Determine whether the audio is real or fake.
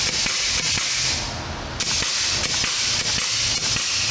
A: real